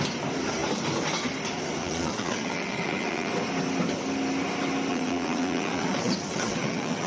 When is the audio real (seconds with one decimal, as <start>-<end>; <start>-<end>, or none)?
0.0-1.8; 3.3-4.9